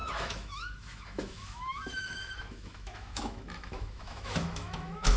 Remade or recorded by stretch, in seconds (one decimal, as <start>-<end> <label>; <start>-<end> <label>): 0.0-5.2 remade